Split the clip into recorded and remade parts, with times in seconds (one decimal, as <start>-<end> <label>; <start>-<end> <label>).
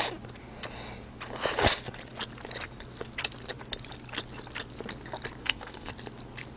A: 0.0-5.4 recorded; 5.4-5.9 remade; 5.9-6.6 recorded